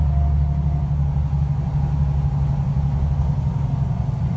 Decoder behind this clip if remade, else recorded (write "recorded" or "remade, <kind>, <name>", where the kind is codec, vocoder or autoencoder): recorded